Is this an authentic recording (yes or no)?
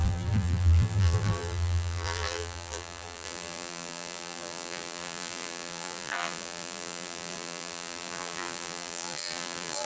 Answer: no